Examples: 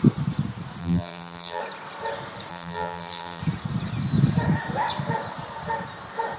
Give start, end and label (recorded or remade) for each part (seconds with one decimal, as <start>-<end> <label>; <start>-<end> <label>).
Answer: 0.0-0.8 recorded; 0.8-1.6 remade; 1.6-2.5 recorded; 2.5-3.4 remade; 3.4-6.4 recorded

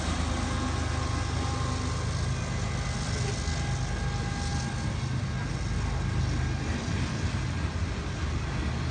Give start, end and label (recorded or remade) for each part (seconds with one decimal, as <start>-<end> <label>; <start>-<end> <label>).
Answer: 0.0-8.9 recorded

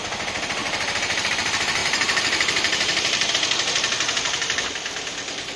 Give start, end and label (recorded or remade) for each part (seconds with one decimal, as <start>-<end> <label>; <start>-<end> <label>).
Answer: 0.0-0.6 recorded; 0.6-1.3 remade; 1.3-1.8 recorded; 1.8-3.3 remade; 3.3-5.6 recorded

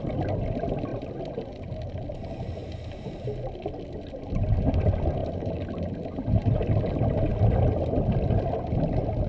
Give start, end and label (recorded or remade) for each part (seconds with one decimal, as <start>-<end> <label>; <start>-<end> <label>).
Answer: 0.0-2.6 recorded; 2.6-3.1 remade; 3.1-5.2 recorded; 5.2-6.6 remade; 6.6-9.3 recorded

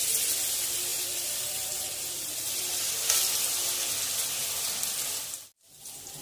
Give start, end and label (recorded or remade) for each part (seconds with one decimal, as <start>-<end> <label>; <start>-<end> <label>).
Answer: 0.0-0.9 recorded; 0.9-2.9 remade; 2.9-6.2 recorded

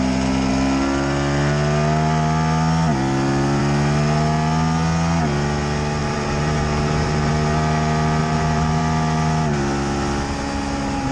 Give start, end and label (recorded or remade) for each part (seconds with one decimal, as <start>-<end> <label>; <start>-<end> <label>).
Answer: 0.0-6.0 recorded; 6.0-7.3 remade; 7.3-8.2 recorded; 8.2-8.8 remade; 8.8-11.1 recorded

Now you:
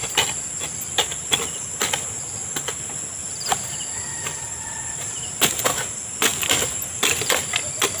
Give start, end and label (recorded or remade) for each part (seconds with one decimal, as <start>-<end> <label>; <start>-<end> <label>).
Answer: 0.0-3.2 recorded; 3.2-5.6 remade; 5.6-8.0 recorded